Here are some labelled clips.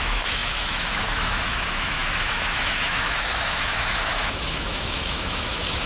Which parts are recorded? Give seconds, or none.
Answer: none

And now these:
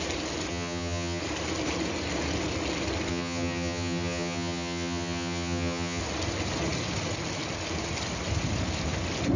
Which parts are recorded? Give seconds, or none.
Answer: 0.0-0.5; 1.2-3.1; 6.0-9.4

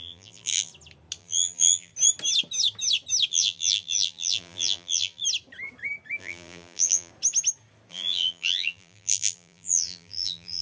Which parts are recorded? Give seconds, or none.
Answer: 0.7-1.2; 1.9-3.3; 5.2-6.2; 7.1-7.9

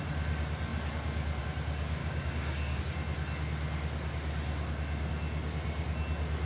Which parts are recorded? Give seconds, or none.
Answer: 0.0-2.0; 2.8-6.5

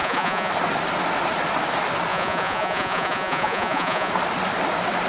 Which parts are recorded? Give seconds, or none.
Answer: 0.5-2.1; 4.1-5.1

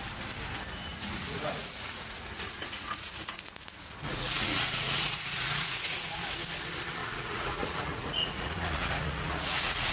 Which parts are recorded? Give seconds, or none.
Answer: 0.0-0.9; 6.2-7.0